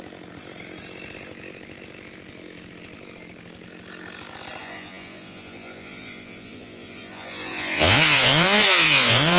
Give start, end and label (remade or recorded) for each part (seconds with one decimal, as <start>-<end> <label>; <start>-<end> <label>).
0.0-4.6 recorded; 4.6-9.4 remade